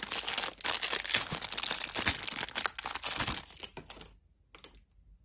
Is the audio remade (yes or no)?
no